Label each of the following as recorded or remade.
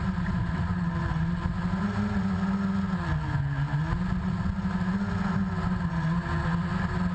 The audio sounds recorded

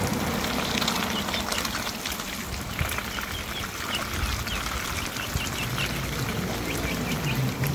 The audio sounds recorded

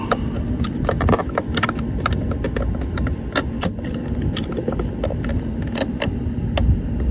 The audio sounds recorded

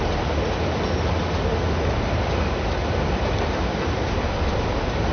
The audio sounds recorded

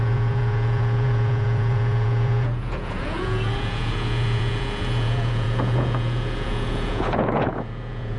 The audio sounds remade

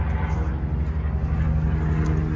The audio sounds recorded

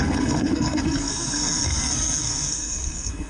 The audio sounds remade